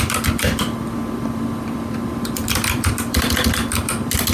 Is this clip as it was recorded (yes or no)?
no